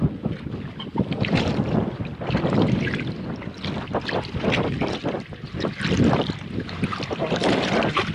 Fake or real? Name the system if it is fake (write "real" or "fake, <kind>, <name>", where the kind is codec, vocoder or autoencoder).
real